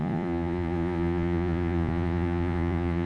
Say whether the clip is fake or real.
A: fake